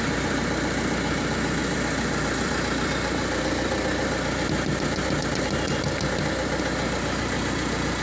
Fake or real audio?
real